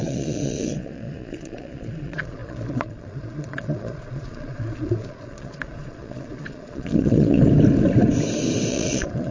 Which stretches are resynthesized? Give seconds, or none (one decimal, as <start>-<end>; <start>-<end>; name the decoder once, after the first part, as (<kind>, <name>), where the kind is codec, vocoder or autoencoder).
0.0-7.4 (vocoder, Vocos); 8.7-9.3